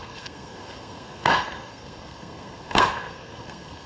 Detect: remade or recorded remade